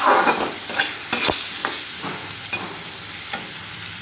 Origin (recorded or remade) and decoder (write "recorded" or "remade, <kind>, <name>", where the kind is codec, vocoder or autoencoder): recorded